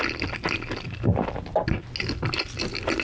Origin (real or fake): real